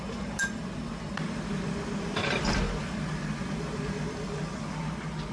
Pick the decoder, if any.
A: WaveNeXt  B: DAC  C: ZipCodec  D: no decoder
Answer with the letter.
D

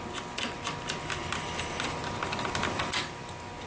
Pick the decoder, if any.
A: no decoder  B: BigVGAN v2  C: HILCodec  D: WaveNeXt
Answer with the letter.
A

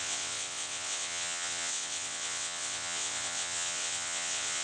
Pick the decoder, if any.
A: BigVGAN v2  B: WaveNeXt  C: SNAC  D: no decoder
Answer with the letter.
B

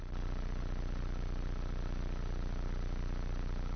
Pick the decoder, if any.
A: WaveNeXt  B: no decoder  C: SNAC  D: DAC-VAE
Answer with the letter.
B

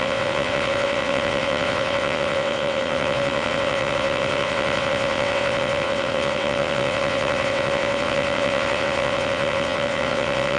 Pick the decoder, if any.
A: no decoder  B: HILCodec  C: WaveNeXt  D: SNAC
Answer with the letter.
C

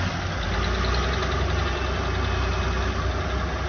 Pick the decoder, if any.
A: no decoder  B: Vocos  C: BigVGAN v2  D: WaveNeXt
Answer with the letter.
A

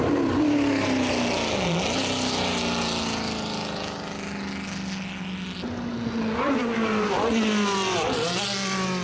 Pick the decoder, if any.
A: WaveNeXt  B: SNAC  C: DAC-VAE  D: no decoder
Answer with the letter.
D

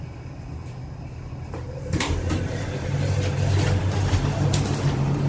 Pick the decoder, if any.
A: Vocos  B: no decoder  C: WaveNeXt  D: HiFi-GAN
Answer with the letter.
B